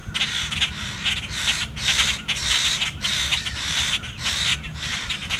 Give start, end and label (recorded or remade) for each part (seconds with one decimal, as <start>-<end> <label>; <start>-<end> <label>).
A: 0.0-3.3 recorded; 3.3-5.4 remade